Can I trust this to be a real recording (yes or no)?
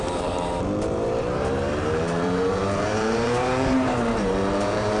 no